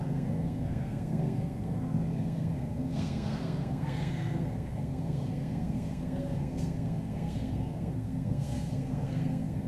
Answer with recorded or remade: remade